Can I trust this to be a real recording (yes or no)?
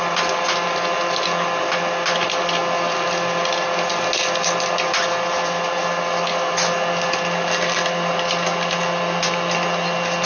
yes